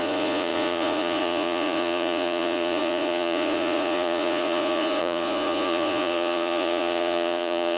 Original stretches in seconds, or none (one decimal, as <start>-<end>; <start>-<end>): none